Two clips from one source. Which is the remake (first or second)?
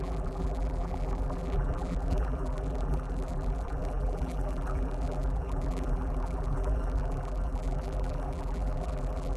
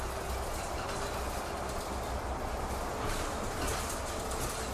first